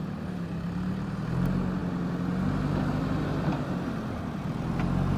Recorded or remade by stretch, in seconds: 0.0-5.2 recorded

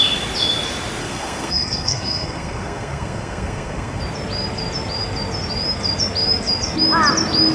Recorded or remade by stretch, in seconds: 0.0-1.0 recorded; 1.0-4.0 remade; 4.0-7.5 recorded

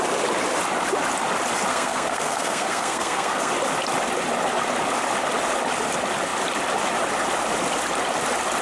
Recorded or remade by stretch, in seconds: 0.0-1.7 recorded; 1.7-3.5 remade; 3.5-8.6 recorded

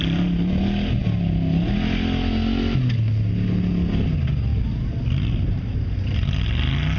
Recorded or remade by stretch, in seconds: 0.0-7.0 recorded